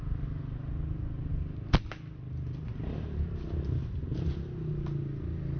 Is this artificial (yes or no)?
no